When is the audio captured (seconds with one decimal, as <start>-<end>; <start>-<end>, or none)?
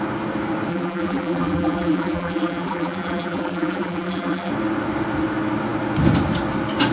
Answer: 0.0-0.7; 4.5-6.9